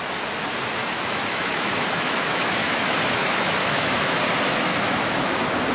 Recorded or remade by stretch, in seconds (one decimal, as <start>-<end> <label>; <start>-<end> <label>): 0.0-0.8 recorded; 0.8-4.2 remade; 4.2-4.7 recorded; 4.7-5.3 remade; 5.3-5.7 recorded